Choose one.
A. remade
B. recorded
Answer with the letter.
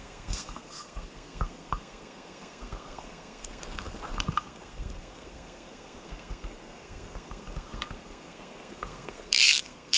A